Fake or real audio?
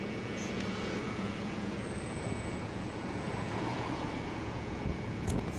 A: fake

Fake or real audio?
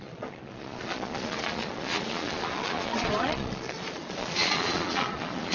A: fake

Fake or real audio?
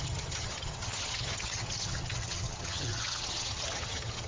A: fake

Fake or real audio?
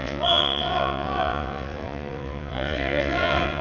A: fake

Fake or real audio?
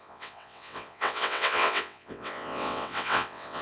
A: fake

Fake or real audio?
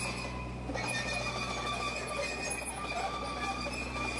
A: real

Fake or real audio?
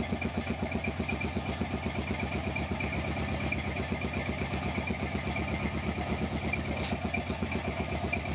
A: real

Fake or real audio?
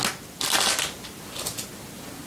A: real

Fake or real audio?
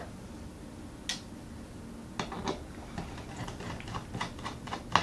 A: real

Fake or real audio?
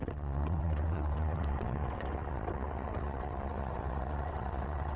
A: fake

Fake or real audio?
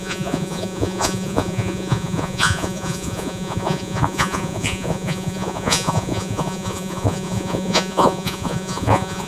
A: fake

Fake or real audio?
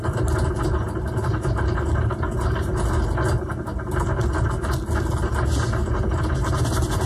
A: real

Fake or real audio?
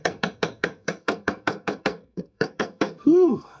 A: fake